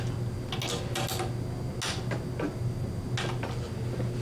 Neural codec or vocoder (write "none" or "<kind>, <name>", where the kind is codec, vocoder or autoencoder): none